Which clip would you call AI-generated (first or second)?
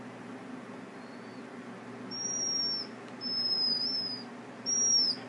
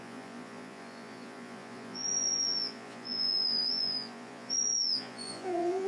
second